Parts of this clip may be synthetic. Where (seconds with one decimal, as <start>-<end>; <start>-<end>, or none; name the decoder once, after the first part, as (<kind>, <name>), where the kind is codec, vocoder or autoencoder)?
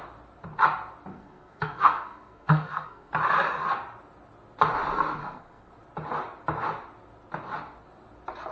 1.1-3.1 (codec, SNAC); 5.2-5.7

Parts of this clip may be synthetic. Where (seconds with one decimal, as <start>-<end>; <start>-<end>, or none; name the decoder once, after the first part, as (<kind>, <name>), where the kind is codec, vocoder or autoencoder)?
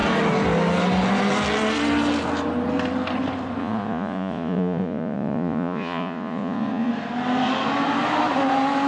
3.6-6.9 (vocoder, Vocos)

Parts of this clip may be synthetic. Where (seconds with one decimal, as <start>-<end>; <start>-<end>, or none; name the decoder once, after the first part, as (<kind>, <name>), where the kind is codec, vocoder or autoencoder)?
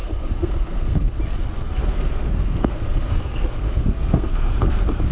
0.0-1.2 (codec, SNAC); 1.8-5.1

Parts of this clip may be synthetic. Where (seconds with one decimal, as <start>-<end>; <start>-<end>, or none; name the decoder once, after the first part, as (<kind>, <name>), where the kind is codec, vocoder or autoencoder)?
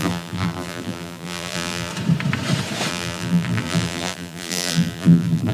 0.0-1.9 (vocoder, BigVGAN v2); 2.9-5.5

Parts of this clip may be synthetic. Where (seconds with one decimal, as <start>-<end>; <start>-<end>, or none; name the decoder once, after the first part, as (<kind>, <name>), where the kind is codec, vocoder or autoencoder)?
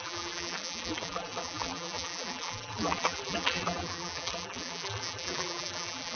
0.0-6.2 (vocoder, BigVGAN v2)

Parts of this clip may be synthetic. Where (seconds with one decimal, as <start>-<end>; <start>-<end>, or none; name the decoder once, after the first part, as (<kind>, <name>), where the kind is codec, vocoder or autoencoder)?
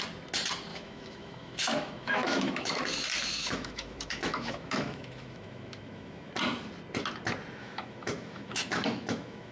0.7-2.8 (autoencoder, DAC-VAE); 3.4-6.3; 7.6-9.5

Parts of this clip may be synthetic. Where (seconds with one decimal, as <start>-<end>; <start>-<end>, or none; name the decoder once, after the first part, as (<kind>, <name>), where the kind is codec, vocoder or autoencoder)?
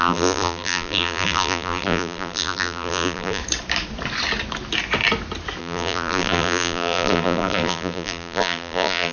0.0-3.4 (vocoder, BigVGAN v2); 5.6-9.1